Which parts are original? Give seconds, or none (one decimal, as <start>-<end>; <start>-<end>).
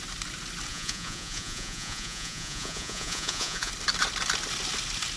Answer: 0.0-0.7; 3.7-5.2